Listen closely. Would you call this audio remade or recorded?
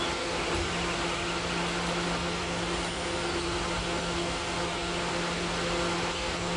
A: recorded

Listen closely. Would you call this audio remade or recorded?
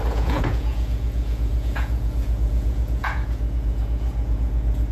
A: remade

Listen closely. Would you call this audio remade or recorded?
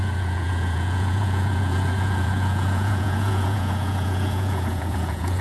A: remade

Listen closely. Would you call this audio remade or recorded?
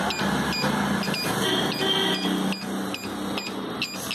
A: recorded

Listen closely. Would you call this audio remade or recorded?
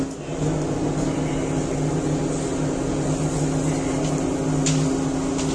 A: recorded